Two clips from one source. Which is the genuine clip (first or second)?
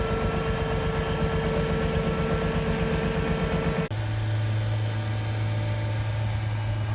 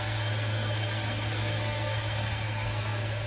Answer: first